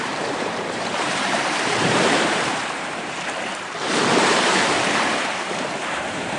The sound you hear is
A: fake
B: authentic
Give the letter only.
A